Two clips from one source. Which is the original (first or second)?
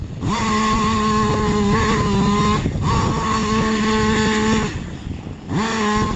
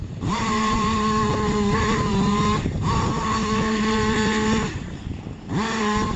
first